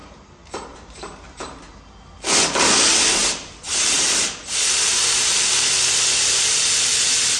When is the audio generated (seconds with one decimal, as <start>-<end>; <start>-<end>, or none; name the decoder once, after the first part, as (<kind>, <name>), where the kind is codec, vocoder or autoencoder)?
0.0-1.8 (vocoder, BigVGAN v2); 3.2-5.4